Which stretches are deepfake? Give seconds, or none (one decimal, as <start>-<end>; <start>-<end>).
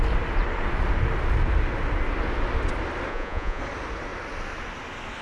3.1-3.6